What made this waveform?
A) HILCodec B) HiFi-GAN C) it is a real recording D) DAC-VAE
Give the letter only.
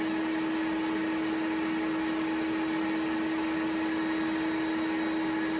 C